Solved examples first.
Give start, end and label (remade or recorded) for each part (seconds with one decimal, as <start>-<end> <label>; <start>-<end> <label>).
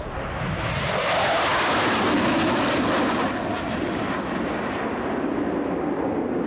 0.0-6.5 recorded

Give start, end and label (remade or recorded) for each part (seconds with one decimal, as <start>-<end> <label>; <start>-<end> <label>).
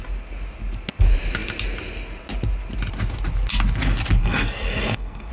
0.0-4.2 recorded; 4.2-5.3 remade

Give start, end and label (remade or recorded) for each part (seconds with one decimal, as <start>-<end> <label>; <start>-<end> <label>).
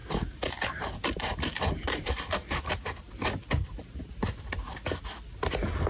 0.0-2.6 remade; 2.6-3.6 recorded; 3.6-4.1 remade; 4.1-5.9 recorded